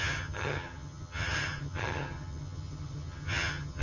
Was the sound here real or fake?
fake